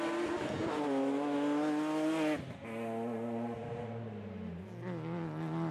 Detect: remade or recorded recorded